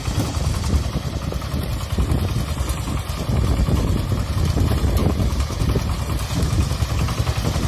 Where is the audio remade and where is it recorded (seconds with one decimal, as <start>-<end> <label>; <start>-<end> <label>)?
0.0-1.2 remade; 1.2-5.0 recorded; 5.0-5.6 remade; 5.6-7.7 recorded